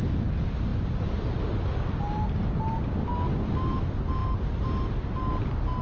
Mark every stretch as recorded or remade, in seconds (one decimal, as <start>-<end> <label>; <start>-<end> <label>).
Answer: 0.0-5.8 recorded